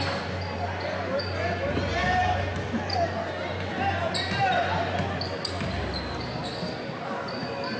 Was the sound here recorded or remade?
recorded